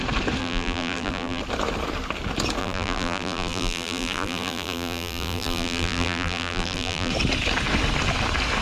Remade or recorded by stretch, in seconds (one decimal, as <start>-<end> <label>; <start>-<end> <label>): 0.0-0.4 recorded; 0.4-1.4 remade; 1.4-2.6 recorded; 2.6-7.1 remade; 7.1-8.6 recorded